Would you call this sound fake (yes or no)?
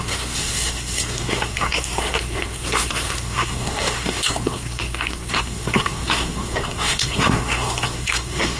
yes